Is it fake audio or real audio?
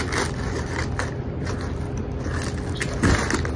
real